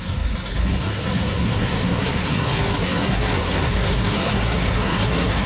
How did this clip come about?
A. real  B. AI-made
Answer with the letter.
B